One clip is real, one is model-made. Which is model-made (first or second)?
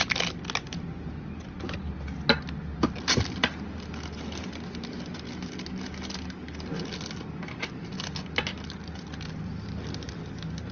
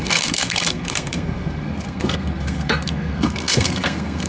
second